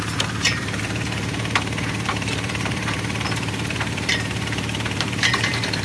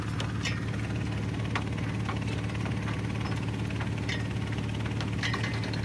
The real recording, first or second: second